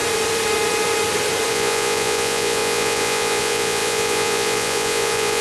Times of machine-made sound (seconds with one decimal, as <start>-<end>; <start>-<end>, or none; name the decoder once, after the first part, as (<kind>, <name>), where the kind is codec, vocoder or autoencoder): 1.5-5.4 (vocoder, Vocos)